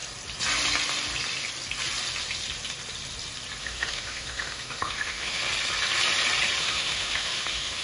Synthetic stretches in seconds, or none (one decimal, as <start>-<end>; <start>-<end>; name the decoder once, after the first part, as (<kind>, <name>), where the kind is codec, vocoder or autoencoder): 3.6-5.4 (autoencoder, DAC-VAE); 6.6-7.8

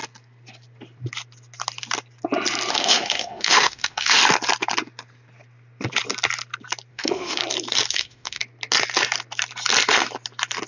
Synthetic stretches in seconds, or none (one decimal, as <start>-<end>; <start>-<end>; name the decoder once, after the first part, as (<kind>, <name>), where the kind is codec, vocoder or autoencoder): 2.7-4.2 (autoencoder, DAC-VAE); 6.9-7.4; 7.9-8.4